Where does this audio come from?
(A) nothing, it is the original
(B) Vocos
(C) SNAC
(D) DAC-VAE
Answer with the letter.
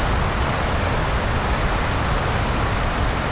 A